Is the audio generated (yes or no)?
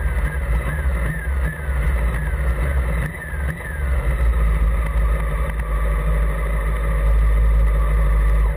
no